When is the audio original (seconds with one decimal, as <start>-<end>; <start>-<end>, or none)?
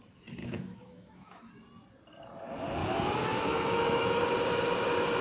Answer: 0.0-0.4; 1.5-2.8; 4.2-5.2